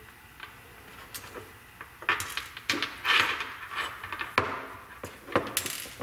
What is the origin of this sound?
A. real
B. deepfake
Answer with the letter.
A